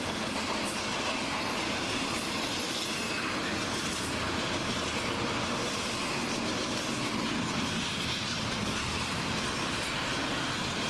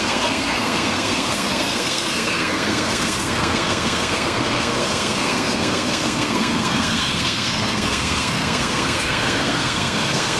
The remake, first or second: second